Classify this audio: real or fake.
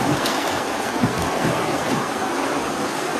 fake